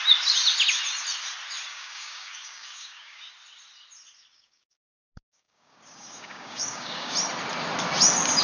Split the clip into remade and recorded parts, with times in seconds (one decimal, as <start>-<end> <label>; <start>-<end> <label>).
0.0-1.7 recorded; 1.7-3.2 remade; 3.2-4.3 recorded; 4.3-7.1 remade; 7.1-8.4 recorded